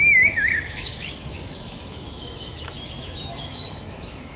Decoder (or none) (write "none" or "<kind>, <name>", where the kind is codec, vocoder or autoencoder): autoencoder, DAC-VAE